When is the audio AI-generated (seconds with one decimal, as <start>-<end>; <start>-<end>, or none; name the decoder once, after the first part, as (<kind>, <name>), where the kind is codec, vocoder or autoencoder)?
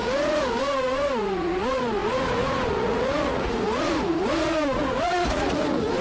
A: 0.0-6.0 (vocoder, Vocos)